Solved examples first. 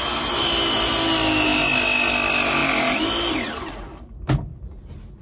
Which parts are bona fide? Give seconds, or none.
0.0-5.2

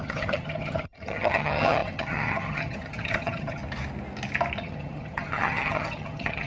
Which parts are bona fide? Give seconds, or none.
3.6-4.6

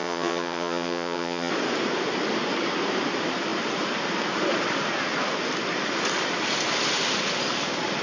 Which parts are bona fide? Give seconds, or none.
1.5-8.0

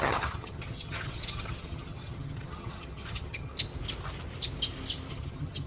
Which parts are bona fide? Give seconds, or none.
3.5-5.1

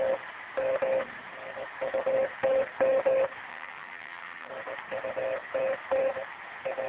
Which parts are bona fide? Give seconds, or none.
0.0-3.5; 4.5-6.9